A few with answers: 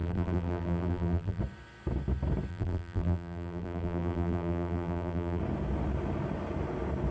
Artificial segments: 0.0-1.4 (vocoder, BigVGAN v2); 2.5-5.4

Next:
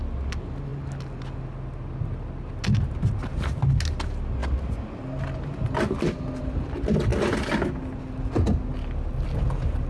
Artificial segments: none

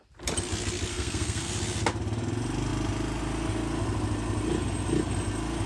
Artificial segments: 0.9-1.5 (codec, SNAC)